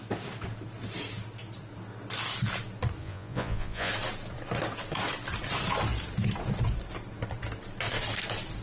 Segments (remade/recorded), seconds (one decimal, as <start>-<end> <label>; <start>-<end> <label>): 0.0-3.0 recorded; 3.0-3.9 remade; 3.9-8.6 recorded